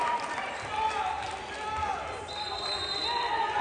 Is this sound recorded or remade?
recorded